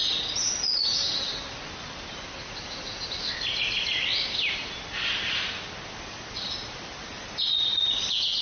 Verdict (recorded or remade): recorded